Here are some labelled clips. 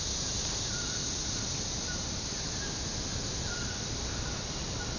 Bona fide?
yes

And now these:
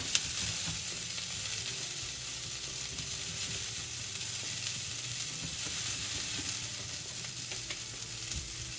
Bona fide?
yes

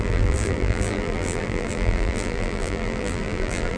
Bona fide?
no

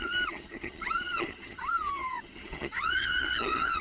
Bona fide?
no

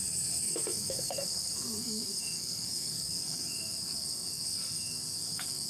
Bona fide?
no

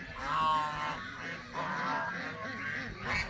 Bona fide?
yes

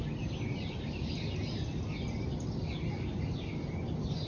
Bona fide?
yes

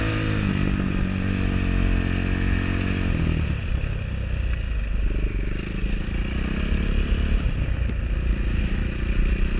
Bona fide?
yes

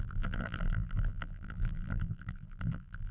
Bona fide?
no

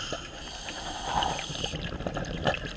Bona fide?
yes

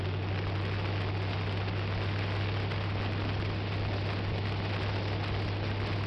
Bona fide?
yes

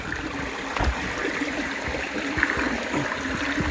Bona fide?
yes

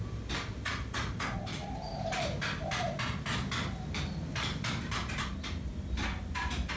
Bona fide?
yes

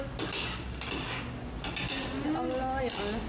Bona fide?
yes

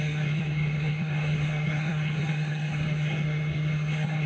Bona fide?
no